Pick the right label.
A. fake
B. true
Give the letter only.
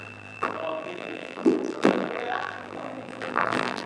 A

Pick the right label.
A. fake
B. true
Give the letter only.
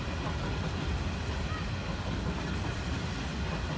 B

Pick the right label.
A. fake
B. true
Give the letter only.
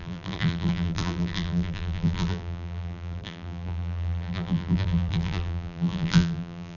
A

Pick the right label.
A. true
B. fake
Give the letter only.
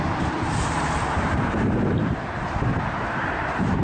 B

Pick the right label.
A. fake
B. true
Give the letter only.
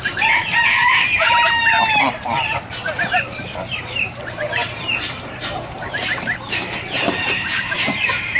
A